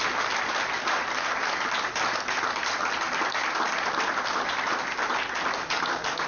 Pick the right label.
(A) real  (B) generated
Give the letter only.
A